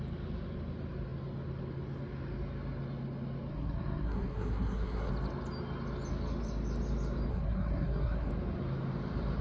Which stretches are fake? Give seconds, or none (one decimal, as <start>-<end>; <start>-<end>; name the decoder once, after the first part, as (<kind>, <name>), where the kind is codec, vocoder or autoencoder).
3.5-5.1 (codec, SNAC); 7.3-8.3